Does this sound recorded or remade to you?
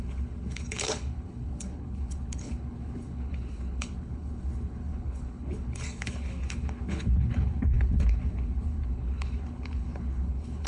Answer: remade